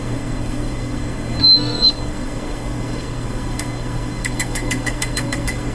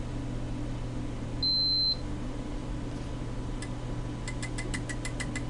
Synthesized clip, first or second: first